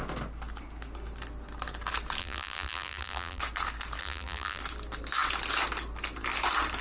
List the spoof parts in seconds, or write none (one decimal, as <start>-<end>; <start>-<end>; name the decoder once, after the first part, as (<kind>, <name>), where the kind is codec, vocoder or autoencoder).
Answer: 2.2-3.4 (vocoder, BigVGAN v2); 4.0-4.6